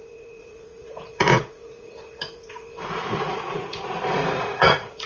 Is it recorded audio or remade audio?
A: remade